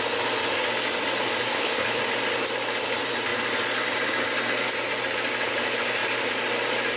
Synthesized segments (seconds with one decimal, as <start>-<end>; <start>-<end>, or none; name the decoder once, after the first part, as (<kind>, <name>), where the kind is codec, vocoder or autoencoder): 1.5-2.0 (codec, HILCodec)